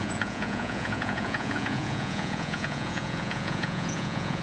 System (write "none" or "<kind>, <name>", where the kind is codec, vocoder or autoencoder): vocoder, Vocos